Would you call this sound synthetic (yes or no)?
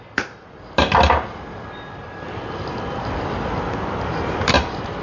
no